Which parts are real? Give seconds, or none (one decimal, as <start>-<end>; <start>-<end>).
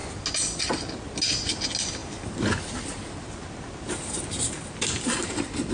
0.0-5.7